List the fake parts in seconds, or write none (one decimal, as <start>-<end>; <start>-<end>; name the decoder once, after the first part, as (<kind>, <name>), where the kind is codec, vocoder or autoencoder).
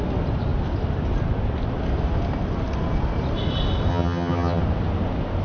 3.9-4.6 (vocoder, HiFi-GAN)